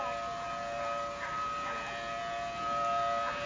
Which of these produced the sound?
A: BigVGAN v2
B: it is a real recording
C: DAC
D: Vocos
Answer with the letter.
B